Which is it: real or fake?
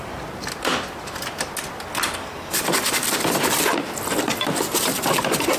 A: fake